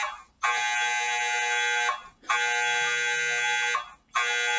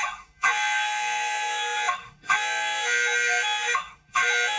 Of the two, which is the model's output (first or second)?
second